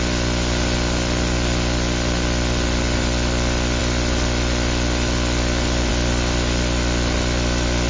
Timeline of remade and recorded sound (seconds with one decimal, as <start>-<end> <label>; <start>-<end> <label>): 0.0-7.9 recorded